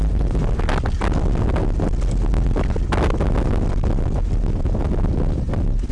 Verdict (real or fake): real